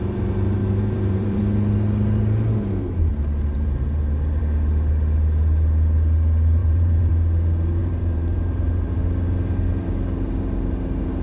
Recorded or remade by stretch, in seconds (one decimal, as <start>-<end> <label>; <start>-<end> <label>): 0.0-0.6 recorded; 0.6-1.4 remade; 1.4-3.1 recorded; 3.1-4.4 remade; 4.4-6.6 recorded; 6.6-7.1 remade; 7.1-7.8 recorded; 7.8-9.0 remade; 9.0-11.2 recorded